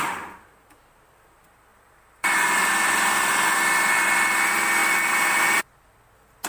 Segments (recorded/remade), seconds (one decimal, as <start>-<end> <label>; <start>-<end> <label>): 0.0-1.7 recorded; 1.7-2.7 remade; 2.7-4.8 recorded; 4.8-5.6 remade; 5.6-6.5 recorded